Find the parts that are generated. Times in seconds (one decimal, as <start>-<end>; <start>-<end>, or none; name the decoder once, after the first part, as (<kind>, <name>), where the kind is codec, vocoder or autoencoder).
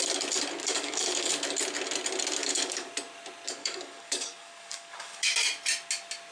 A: 0.6-1.3 (codec, DAC); 2.4-2.9; 3.6-5.3